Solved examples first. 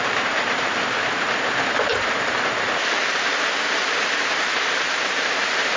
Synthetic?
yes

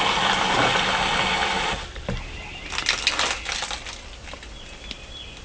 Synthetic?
no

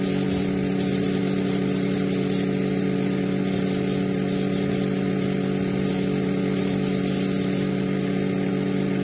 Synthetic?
no